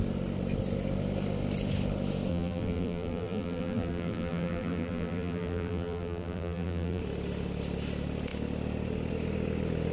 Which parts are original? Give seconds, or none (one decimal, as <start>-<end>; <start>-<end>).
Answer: 0.0-2.3; 7.0-9.9